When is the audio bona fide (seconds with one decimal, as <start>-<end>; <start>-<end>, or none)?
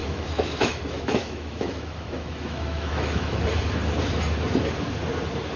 3.4-5.6